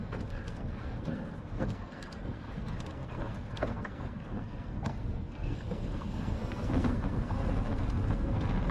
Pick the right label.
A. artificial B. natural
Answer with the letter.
A